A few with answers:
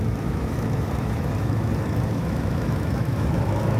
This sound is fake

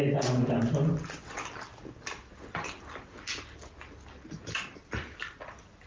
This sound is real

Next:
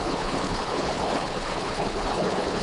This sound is fake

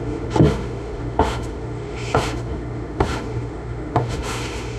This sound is fake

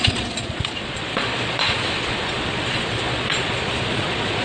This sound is fake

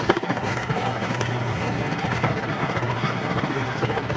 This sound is fake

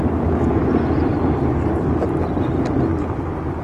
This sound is real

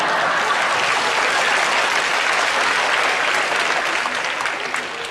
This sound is real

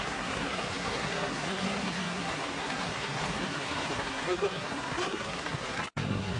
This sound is fake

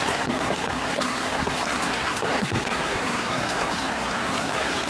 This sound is fake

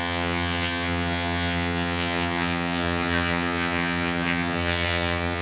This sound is fake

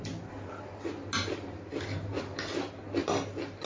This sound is real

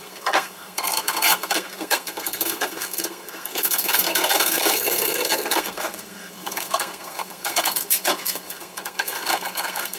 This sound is fake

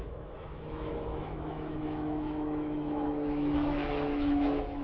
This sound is fake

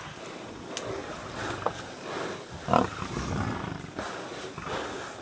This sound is real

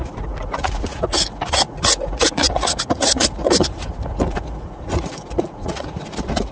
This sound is fake